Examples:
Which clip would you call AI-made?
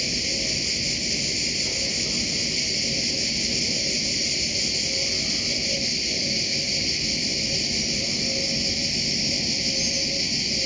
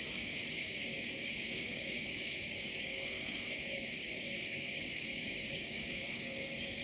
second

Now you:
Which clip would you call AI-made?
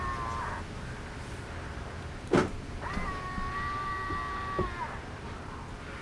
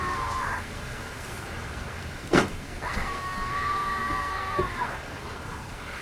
second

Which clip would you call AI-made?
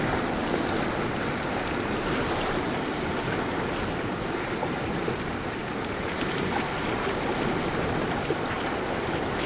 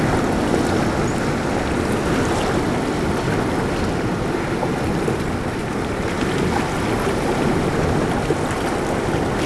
first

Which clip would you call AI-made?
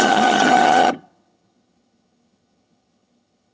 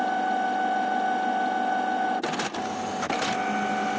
first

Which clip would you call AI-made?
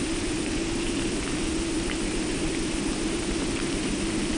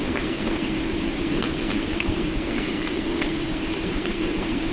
second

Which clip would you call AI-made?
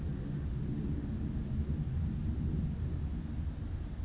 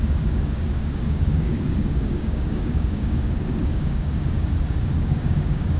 second